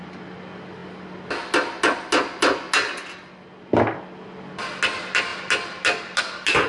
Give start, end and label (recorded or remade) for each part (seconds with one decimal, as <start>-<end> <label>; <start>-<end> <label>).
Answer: 0.0-6.7 recorded